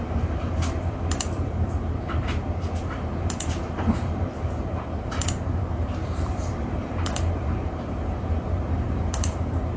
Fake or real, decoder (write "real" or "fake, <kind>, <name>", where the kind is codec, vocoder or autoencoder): fake, vocoder, BigVGAN v2